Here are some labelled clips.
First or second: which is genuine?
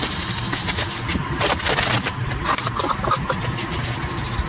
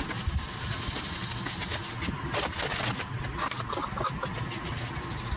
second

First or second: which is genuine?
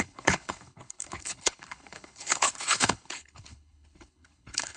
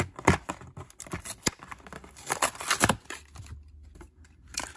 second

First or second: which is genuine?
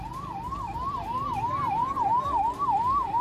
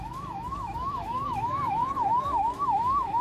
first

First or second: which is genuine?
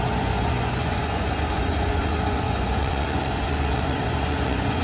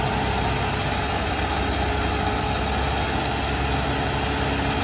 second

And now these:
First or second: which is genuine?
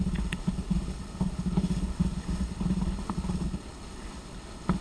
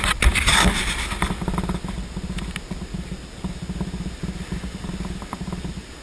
second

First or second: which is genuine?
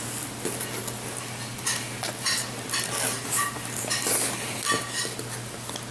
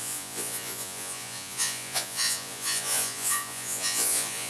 first